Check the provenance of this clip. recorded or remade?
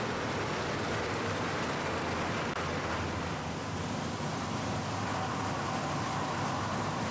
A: recorded